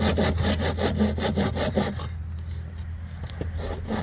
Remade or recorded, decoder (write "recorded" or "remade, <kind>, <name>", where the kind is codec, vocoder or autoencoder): recorded